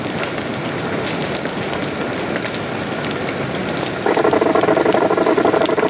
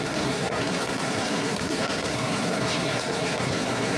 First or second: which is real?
first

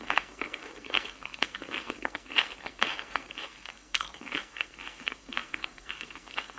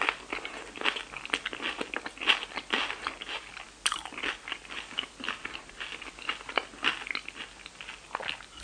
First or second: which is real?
second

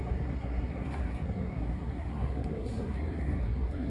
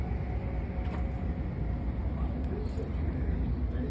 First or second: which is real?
second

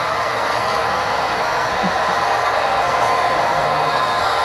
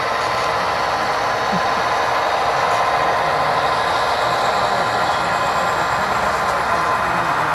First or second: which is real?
second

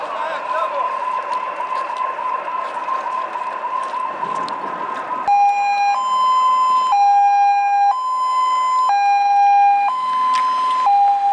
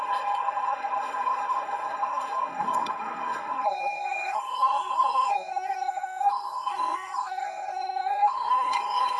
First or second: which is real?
first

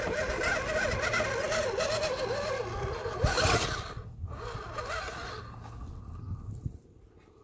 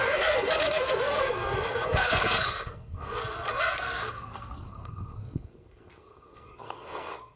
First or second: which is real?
first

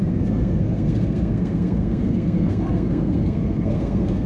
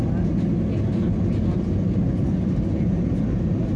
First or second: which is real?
second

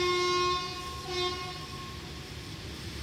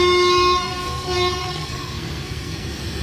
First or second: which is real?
first